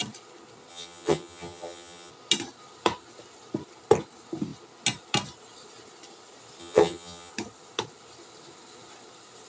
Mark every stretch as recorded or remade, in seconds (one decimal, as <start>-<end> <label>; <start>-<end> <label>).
0.0-0.7 recorded; 0.7-2.1 remade; 2.1-6.6 recorded; 6.6-7.3 remade; 7.3-9.5 recorded